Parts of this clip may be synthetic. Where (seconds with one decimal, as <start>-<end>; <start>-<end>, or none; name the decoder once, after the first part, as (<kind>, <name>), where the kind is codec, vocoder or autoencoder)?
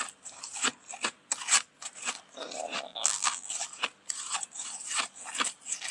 2.9-3.5 (vocoder, BigVGAN v2)